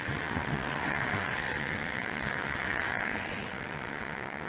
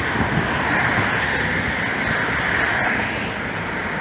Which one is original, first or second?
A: second